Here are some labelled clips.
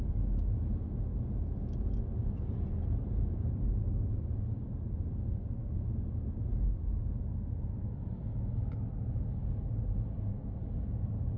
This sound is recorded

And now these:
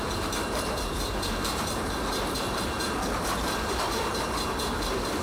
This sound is remade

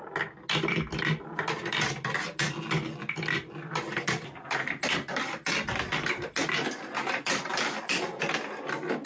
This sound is recorded